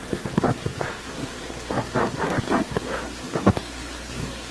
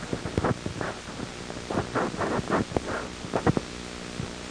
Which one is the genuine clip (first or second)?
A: second